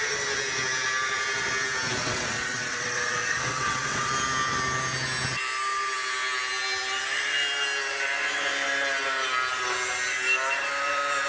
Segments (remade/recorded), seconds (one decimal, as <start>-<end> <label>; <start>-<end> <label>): 0.0-2.0 recorded; 2.0-4.1 remade; 4.1-11.3 recorded